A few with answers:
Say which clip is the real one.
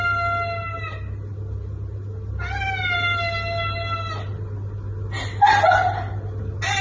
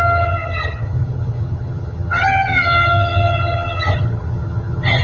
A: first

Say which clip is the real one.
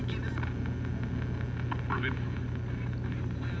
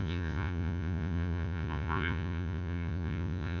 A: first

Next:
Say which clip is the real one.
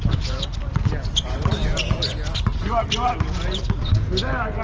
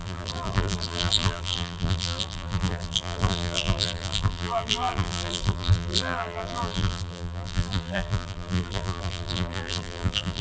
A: first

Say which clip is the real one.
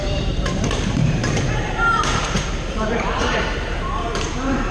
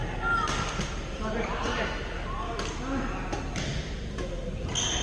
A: second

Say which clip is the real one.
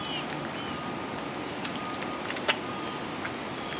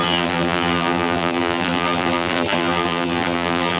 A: first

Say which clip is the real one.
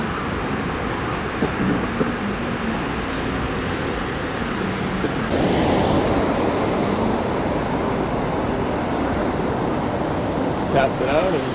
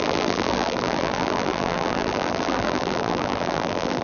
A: first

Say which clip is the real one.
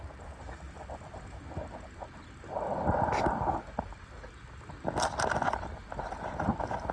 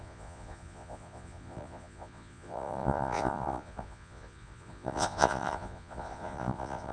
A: first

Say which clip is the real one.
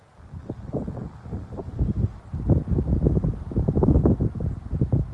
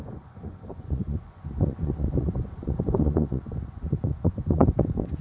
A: first